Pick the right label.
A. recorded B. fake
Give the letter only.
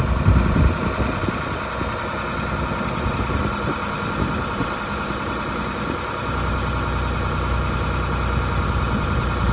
A